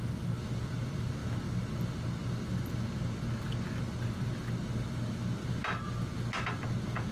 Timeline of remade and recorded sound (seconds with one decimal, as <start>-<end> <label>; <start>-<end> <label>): 0.0-7.1 recorded